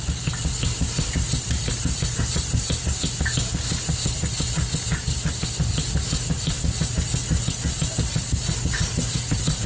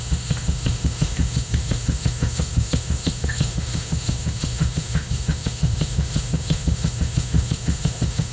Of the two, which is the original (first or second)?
first